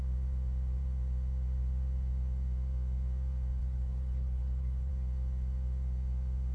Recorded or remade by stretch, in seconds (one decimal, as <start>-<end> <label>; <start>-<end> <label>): 0.0-3.6 recorded; 3.6-4.9 remade; 4.9-6.5 recorded